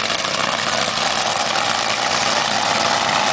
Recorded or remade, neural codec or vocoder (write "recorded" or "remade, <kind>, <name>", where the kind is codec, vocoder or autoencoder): recorded